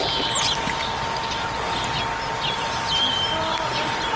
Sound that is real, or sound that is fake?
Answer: real